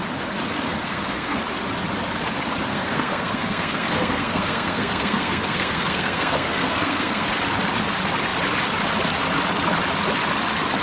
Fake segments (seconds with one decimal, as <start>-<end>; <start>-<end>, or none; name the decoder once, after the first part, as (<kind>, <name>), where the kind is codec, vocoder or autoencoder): 0.8-1.4 (codec, SNAC); 2.7-7.3